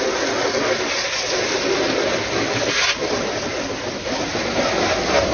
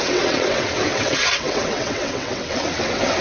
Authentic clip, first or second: first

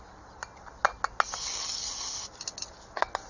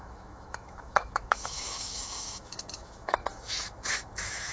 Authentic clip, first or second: first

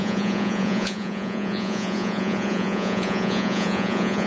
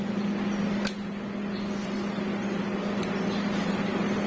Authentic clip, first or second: second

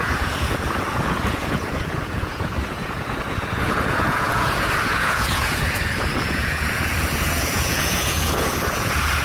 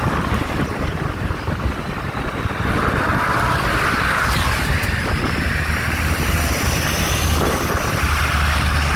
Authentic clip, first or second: second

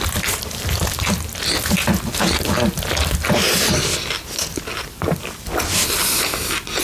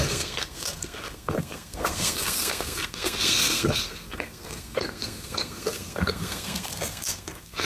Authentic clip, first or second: first